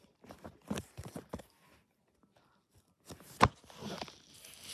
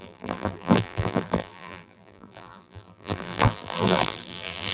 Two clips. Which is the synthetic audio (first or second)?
second